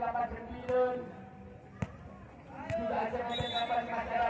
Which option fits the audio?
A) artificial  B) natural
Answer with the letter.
B